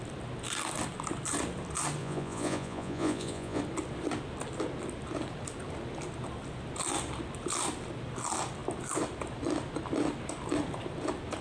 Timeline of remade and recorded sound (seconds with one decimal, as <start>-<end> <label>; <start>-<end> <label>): 0.0-2.0 recorded; 2.0-3.6 remade; 3.6-11.4 recorded

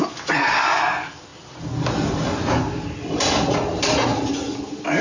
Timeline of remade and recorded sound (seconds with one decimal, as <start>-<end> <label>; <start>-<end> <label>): 0.0-5.0 recorded

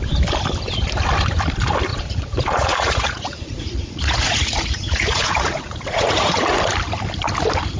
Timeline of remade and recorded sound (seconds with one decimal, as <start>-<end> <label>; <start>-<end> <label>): 0.0-1.9 recorded; 1.9-6.6 remade; 6.6-7.8 recorded

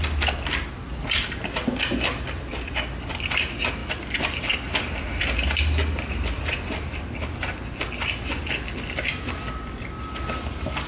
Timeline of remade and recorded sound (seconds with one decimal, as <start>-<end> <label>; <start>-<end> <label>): 0.0-10.9 recorded

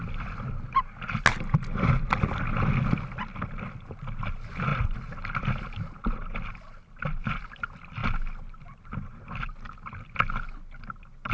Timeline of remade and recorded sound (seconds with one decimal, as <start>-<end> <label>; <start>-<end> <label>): 0.0-11.3 recorded